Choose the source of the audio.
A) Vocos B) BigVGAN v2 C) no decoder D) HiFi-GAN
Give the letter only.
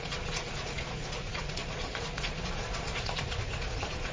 A